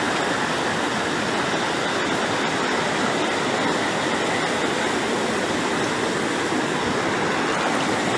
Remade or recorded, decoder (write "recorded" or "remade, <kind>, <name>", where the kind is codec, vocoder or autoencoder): recorded